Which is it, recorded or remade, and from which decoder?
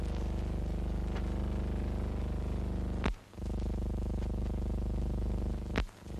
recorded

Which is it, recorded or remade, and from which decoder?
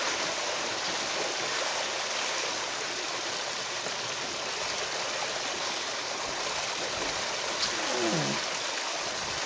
recorded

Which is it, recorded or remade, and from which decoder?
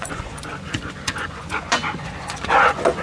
remade, vocoder, Vocos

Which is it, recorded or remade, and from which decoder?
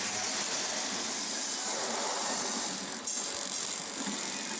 recorded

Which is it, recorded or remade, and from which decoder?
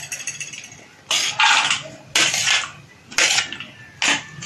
recorded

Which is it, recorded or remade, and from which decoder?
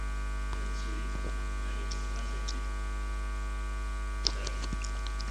recorded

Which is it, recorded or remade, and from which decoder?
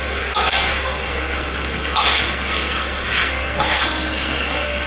remade, codec, SNAC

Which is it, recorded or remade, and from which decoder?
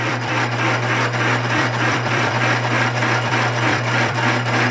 remade, vocoder, BigVGAN v2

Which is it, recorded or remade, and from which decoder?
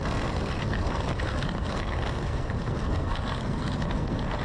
remade, codec, SNAC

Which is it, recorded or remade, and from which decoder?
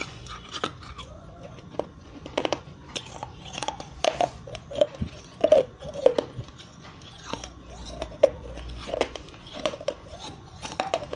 remade, vocoder, Vocos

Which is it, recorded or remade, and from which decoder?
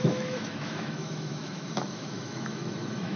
remade, autoencoder, DAC-VAE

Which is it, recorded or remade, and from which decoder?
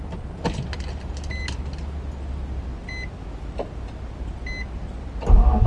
recorded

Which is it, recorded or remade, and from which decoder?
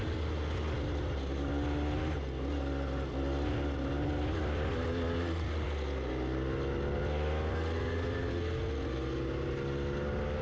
recorded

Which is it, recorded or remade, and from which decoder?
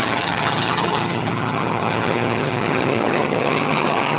remade, vocoder, HiFi-GAN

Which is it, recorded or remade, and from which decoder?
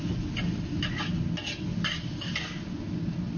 recorded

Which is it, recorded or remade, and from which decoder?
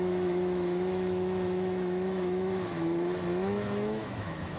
remade, autoencoder, DAC-VAE